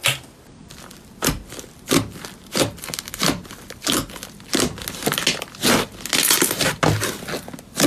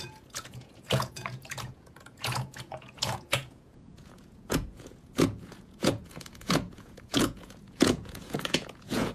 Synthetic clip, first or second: second